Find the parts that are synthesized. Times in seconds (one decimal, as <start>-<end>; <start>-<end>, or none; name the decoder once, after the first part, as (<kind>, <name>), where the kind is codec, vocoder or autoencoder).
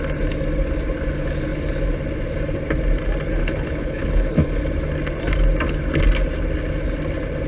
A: 3.4-4.6 (codec, HILCodec)